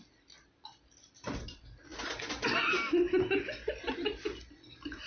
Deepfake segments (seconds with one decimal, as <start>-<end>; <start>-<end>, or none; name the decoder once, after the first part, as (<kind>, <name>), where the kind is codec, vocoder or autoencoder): none